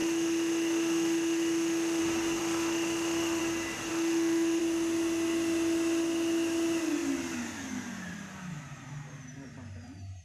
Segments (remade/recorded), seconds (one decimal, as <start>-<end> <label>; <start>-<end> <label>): 0.0-2.0 remade; 2.0-2.4 recorded; 2.4-3.4 remade; 3.4-3.9 recorded; 3.9-4.6 remade; 4.6-10.2 recorded